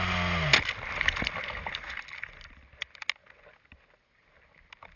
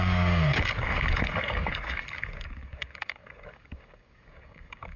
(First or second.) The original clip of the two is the first